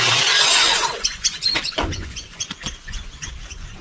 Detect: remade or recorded remade